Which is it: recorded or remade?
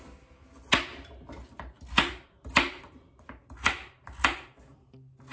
recorded